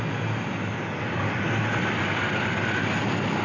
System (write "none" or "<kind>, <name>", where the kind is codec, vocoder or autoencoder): none